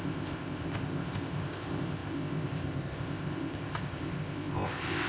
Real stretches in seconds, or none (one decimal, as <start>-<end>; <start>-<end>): none